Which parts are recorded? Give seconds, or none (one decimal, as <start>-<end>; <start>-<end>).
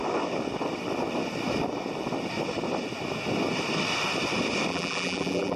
0.0-4.7